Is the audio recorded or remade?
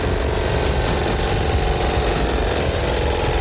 recorded